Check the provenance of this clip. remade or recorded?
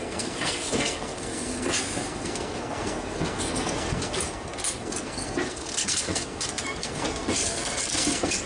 remade